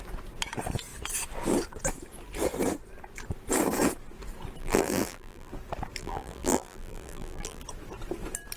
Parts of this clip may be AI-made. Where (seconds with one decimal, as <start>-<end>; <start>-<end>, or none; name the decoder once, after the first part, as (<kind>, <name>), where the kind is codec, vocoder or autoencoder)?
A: 4.6-5.5 (vocoder, BigVGAN v2); 6.0-7.6